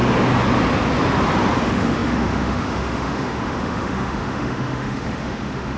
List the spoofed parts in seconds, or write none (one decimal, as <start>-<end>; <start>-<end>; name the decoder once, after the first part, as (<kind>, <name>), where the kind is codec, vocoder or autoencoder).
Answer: 1.6-5.8 (autoencoder, DAC-VAE)